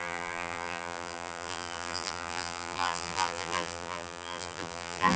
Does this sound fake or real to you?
fake